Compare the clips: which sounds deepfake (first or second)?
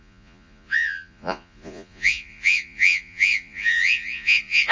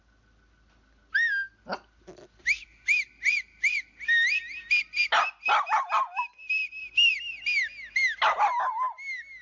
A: first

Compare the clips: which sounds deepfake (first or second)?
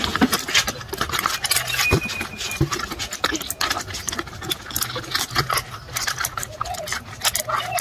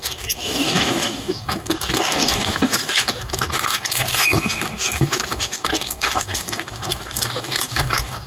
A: second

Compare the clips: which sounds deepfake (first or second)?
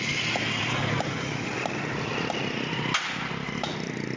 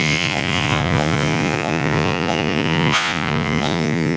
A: second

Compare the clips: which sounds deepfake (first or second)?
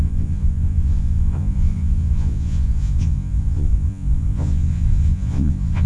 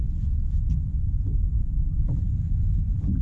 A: first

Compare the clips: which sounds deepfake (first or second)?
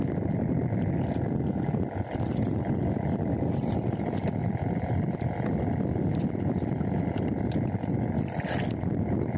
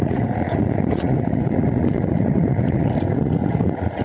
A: second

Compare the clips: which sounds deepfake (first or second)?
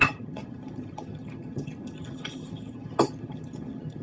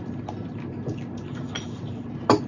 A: first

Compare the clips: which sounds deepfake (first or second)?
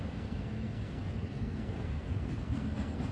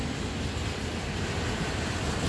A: first